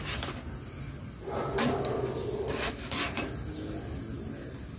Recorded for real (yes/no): yes